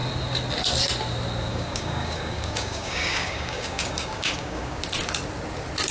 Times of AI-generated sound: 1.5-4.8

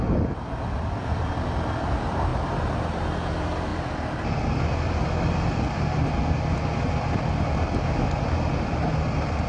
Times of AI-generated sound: 2.3-3.3

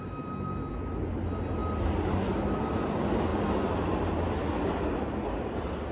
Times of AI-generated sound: none

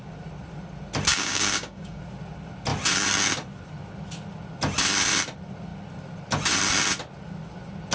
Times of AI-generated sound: 1.1-2.0

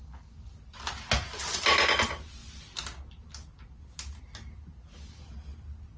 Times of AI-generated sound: none

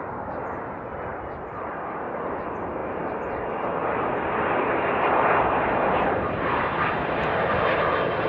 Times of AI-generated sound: 1.1-1.7; 3.8-5.3

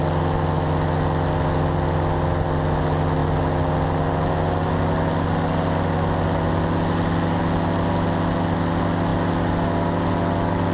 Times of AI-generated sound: none

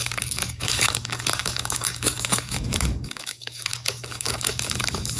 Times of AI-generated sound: 0.0-5.2